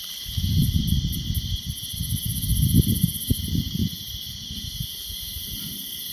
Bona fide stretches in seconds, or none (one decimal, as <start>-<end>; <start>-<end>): 0.0-6.1